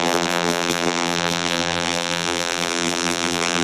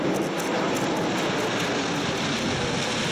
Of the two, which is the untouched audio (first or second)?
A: second